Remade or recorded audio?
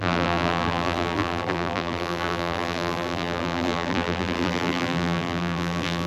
remade